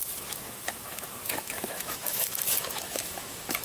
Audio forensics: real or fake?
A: fake